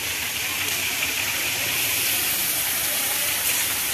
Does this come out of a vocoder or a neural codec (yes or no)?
yes